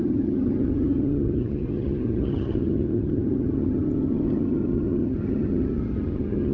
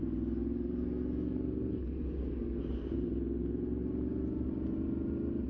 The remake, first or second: first